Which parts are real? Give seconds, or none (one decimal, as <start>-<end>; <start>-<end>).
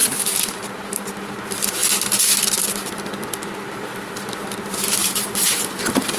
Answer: 1.4-5.0